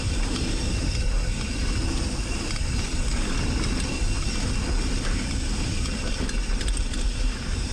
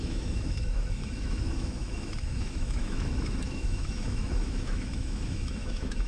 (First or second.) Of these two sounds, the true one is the first